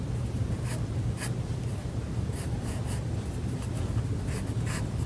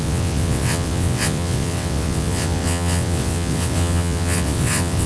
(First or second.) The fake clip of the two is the second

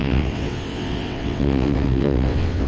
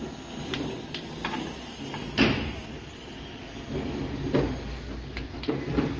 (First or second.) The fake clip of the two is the first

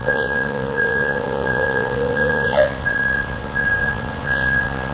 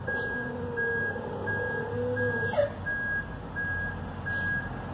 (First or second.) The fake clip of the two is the first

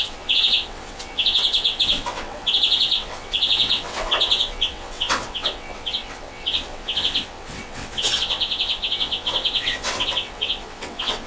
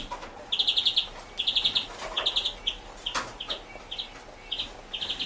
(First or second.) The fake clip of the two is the first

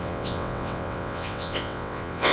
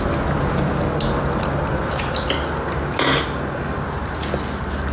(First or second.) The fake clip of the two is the first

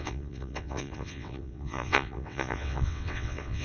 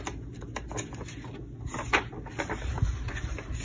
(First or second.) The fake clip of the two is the first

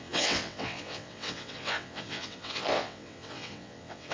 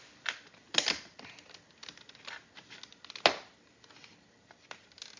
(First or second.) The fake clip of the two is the first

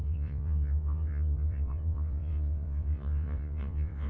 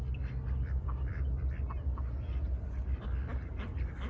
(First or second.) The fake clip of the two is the first